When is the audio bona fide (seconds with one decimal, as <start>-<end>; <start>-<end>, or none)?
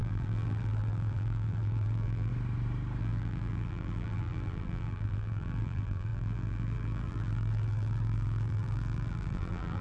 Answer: 2.3-3.0